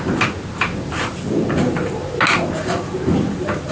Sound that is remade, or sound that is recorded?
recorded